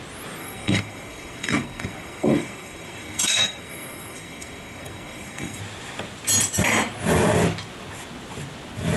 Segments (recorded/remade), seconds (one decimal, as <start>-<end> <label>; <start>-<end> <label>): 0.0-0.4 recorded; 0.4-5.6 remade; 5.6-9.0 recorded